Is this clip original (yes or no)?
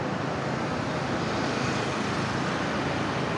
yes